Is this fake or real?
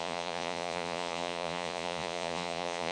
fake